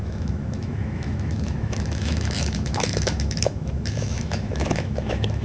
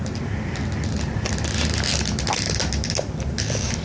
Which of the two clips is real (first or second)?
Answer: second